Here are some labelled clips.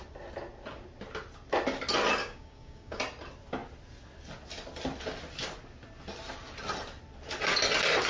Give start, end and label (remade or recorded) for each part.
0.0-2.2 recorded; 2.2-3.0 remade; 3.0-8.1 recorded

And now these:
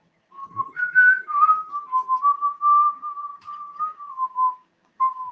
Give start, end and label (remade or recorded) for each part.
0.0-0.4 remade; 0.4-2.2 recorded; 2.2-5.3 remade

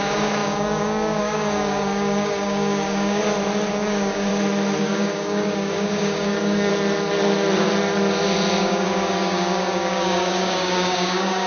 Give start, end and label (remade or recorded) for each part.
0.0-3.2 remade; 3.2-3.7 recorded; 3.7-4.3 remade; 4.3-4.8 recorded; 4.8-6.7 remade; 6.7-8.6 recorded; 8.6-11.5 remade

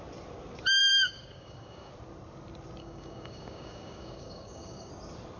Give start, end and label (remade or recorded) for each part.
0.0-0.8 recorded; 0.8-1.9 remade; 1.9-2.8 recorded; 2.8-4.9 remade; 4.9-5.4 recorded